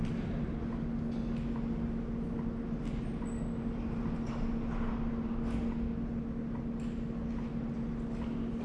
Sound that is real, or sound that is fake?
real